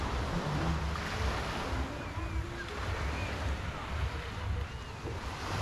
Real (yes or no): yes